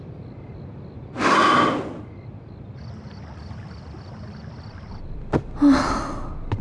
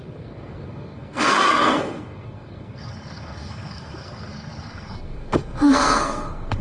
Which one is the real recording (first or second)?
first